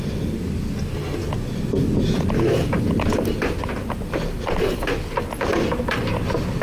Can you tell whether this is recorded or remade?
recorded